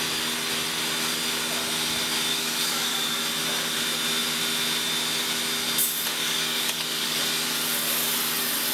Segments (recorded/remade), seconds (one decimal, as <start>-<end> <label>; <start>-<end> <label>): 0.0-2.3 recorded; 2.3-3.2 remade; 3.2-6.1 recorded; 6.1-7.2 remade; 7.2-8.7 recorded